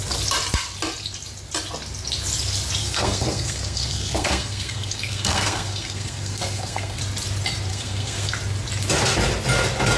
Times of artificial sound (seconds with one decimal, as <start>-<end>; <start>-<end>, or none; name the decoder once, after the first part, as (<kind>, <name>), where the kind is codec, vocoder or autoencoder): 2.8-7.0 (codec, SNAC); 7.7-8.3